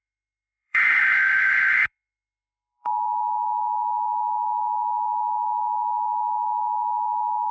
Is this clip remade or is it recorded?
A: remade